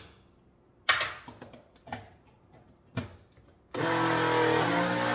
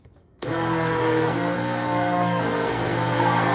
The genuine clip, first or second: first